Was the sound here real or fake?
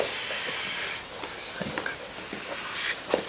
real